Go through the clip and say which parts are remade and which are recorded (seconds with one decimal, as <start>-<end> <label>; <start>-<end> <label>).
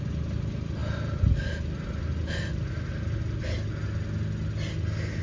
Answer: 0.0-5.2 recorded